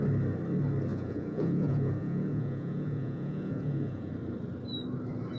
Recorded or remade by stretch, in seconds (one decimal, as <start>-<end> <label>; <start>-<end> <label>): 0.0-0.9 recorded; 0.9-4.1 remade; 4.1-5.4 recorded